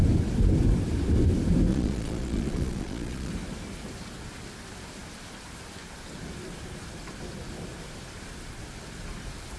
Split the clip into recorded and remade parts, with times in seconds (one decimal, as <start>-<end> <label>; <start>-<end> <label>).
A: 0.0-1.7 recorded; 1.7-3.3 remade; 3.3-9.6 recorded